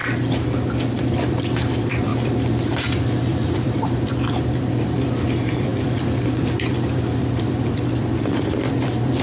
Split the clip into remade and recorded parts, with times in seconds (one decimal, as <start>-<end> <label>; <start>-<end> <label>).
0.0-1.0 recorded; 1.0-9.2 remade